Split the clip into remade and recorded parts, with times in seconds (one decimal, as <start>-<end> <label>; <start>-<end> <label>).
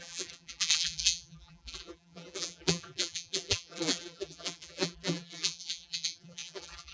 0.0-6.9 remade